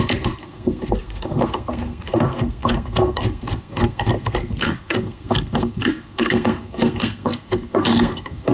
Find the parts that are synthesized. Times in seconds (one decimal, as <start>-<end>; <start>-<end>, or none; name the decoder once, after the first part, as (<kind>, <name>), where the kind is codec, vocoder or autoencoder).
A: 0.0-8.5 (codec, SNAC)